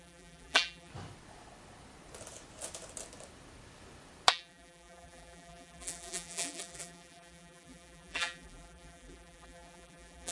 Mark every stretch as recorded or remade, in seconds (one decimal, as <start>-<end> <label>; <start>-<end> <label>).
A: 0.0-0.9 remade; 0.9-4.3 recorded; 4.3-10.3 remade

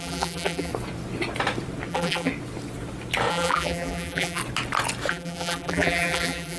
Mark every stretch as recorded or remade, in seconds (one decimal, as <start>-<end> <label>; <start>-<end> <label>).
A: 0.0-0.7 remade; 0.7-1.9 recorded; 1.9-2.3 remade; 2.3-3.3 recorded; 3.3-4.4 remade; 4.4-5.1 recorded; 5.1-6.6 remade

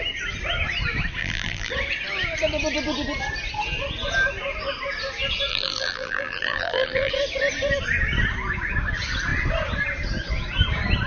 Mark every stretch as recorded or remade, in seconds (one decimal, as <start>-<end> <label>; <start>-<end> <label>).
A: 0.0-1.2 recorded; 1.2-1.7 remade; 1.7-5.5 recorded; 5.5-7.1 remade; 7.1-11.1 recorded